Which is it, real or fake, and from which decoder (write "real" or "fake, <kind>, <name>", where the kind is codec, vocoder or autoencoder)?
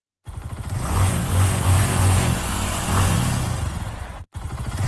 fake, vocoder, Vocos